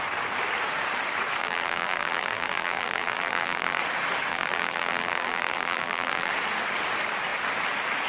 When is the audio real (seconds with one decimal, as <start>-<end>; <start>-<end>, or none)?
0.0-1.4; 3.8-4.3; 6.3-8.1